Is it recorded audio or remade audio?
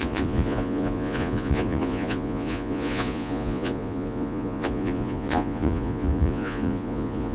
remade